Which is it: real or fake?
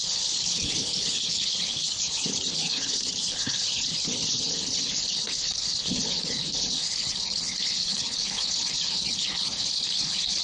fake